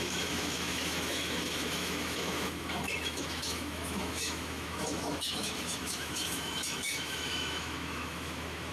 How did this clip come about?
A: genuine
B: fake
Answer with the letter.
B